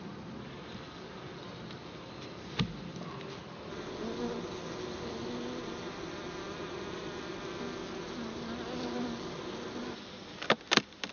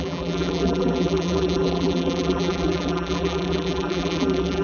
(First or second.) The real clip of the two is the first